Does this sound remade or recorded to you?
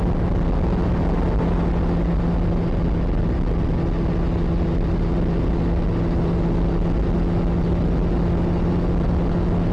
recorded